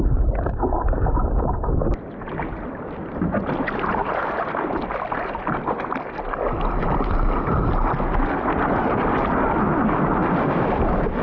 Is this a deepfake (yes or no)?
no